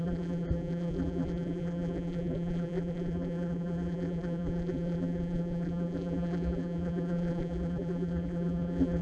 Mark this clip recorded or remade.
remade